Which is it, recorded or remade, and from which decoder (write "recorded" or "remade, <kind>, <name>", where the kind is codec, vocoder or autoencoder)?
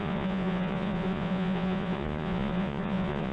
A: remade, vocoder, Vocos